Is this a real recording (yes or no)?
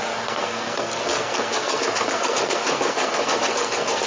no